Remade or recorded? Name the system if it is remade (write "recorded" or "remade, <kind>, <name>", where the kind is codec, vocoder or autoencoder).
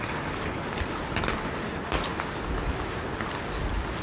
recorded